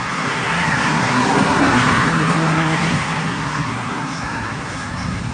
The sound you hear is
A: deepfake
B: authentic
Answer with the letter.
A